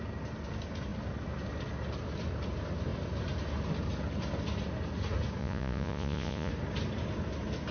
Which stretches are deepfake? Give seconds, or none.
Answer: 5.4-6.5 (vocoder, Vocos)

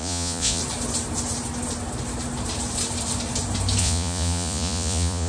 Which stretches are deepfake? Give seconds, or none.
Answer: 0.0-0.6 (vocoder, Vocos); 3.8-5.3